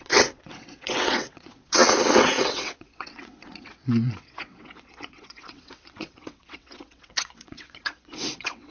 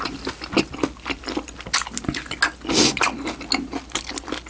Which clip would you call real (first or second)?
second